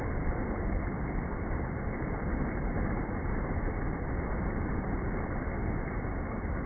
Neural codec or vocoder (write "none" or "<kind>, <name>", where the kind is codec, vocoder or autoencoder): none